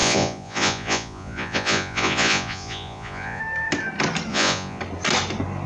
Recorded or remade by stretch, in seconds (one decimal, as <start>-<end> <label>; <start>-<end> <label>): 0.0-3.4 remade; 3.4-4.3 recorded; 4.3-4.8 remade; 4.8-5.7 recorded